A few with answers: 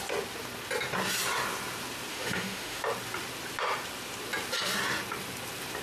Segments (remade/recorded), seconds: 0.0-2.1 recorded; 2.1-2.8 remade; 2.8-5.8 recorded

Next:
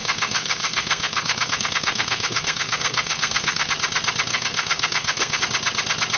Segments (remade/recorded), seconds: 0.0-3.7 remade; 3.7-4.3 recorded; 4.3-5.4 remade; 5.4-6.2 recorded

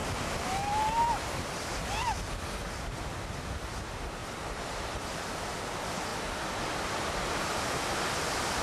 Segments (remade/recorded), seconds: 0.0-4.2 recorded; 4.2-5.2 remade; 5.2-6.1 recorded; 6.1-8.6 remade

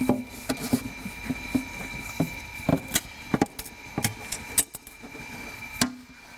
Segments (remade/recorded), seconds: 0.0-6.4 recorded

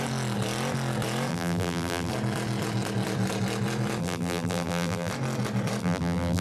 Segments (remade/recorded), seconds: 0.0-1.3 recorded; 1.3-2.1 remade; 2.1-4.0 recorded; 4.0-5.1 remade; 5.1-5.8 recorded; 5.8-6.4 remade

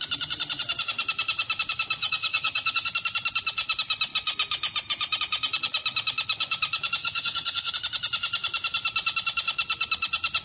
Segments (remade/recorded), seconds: 0.0-2.0 recorded; 2.0-2.9 remade; 2.9-7.0 recorded; 7.0-7.7 remade; 7.7-10.4 recorded

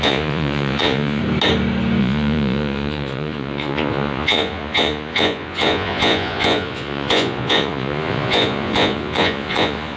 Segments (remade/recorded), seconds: 0.0-1.2 remade; 1.2-2.0 recorded; 2.0-10.0 remade